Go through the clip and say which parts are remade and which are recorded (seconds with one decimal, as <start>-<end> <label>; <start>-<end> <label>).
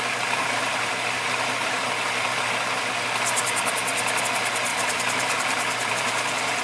0.0-2.3 remade; 2.3-4.2 recorded; 4.2-6.6 remade